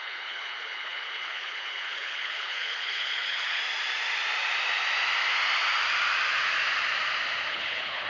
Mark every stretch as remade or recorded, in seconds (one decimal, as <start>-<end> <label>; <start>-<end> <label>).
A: 0.0-3.6 remade; 3.6-7.5 recorded; 7.5-8.1 remade